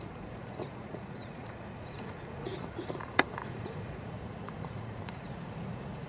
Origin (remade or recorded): remade